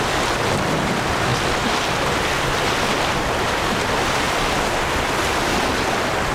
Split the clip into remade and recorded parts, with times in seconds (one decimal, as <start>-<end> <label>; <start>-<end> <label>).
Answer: 0.0-6.3 recorded